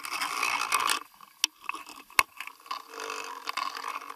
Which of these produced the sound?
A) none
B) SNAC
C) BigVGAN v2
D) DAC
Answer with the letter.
A